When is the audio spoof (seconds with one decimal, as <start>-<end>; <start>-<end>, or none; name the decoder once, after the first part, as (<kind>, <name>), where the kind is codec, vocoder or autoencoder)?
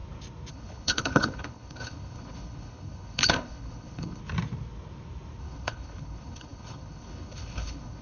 0.5-4.2 (codec, HILCodec); 5.4-8.0